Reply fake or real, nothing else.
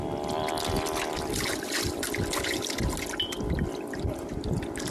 real